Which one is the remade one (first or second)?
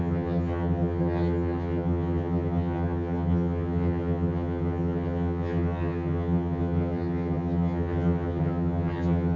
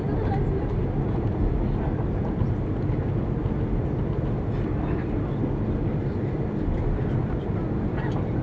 first